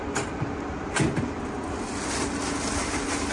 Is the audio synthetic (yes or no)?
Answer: no